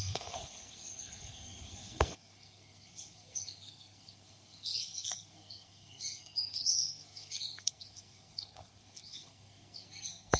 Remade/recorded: remade